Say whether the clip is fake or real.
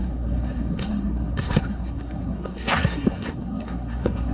fake